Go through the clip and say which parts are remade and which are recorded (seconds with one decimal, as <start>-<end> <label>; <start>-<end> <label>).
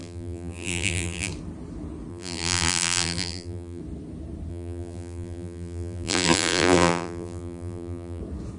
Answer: 0.0-1.3 remade; 1.3-2.1 recorded; 2.1-3.8 remade; 3.8-4.5 recorded; 4.5-8.2 remade; 8.2-8.6 recorded